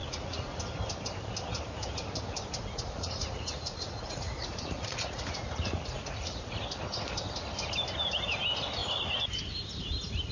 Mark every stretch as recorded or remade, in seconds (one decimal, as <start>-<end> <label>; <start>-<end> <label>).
0.0-0.6 remade; 0.6-2.6 recorded; 2.6-6.6 remade; 6.6-10.3 recorded